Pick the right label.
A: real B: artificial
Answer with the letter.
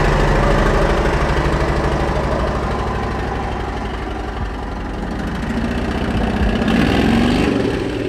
A